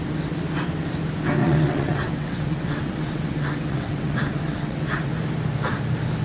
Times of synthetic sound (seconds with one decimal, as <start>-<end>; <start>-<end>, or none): 1.4-5.1